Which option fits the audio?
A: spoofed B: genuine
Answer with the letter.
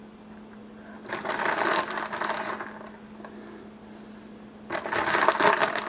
B